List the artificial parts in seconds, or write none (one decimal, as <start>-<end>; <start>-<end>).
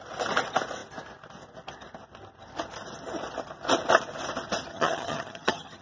4.7-5.8